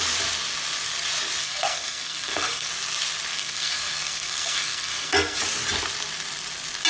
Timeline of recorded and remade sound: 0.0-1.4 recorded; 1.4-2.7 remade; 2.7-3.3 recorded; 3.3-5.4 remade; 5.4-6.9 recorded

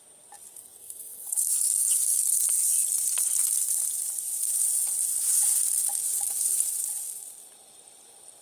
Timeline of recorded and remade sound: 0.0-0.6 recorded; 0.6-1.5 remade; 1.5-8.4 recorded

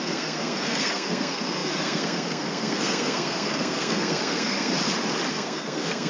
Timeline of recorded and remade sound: 0.0-4.7 remade; 4.7-5.3 recorded; 5.3-6.1 remade

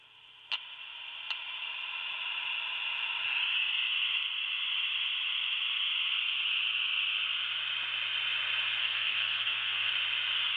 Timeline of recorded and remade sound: 0.0-8.8 recorded; 8.8-9.9 remade; 9.9-10.6 recorded

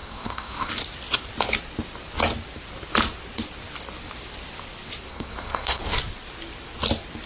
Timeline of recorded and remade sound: 0.0-0.7 remade; 0.7-5.1 recorded; 5.1-5.8 remade; 5.8-7.3 recorded

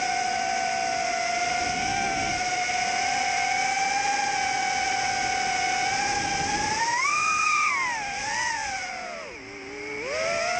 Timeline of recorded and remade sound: 0.0-7.1 recorded; 7.1-7.7 remade; 7.7-10.6 recorded